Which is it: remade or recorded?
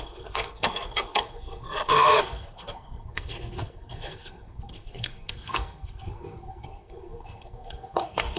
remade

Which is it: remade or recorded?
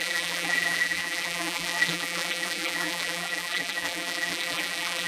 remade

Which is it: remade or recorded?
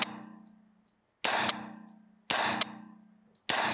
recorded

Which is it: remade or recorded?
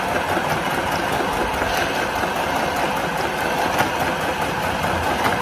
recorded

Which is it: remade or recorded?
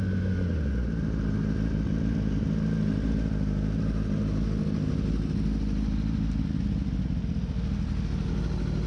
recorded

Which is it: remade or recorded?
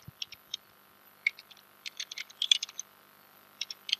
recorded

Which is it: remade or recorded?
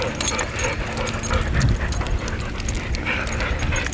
recorded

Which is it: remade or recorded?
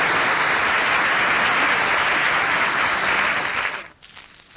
recorded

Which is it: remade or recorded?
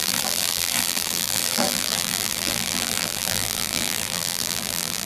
remade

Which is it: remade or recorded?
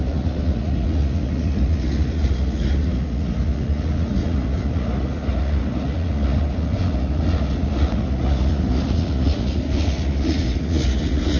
remade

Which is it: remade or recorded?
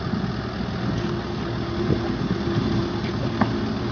recorded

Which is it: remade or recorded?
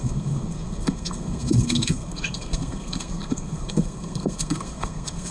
remade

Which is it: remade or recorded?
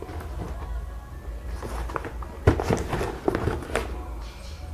recorded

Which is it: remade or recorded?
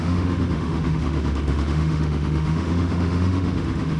remade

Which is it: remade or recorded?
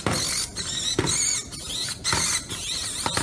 recorded